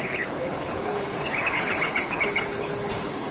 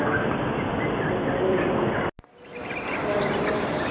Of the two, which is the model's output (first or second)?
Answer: first